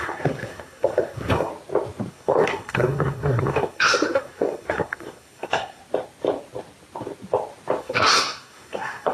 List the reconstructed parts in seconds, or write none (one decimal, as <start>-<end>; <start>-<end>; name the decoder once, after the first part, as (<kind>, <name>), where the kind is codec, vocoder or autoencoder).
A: 0.0-1.5 (codec, SNAC); 2.1-5.8; 7.8-9.1